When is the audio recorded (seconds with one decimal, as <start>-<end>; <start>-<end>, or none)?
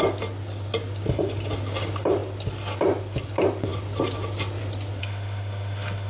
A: 0.0-5.0